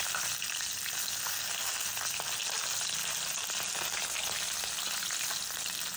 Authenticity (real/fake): real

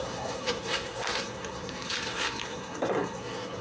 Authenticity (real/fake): fake